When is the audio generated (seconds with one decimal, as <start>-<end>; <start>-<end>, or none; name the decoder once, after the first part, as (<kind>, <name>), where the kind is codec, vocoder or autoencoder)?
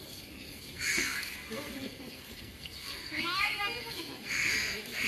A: 0.0-5.1 (codec, SNAC)